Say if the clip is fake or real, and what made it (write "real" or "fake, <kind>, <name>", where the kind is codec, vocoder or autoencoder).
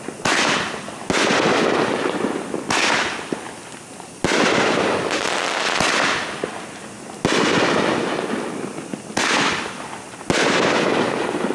real